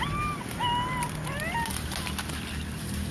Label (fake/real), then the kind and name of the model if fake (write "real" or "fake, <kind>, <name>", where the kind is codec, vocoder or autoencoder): real